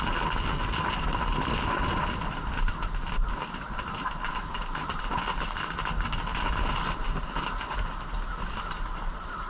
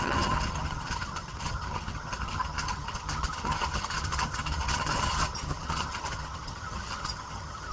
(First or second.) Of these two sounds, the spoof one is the second